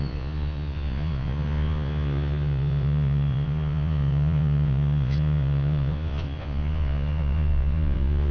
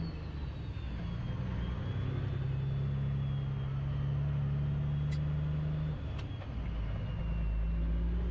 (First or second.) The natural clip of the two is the second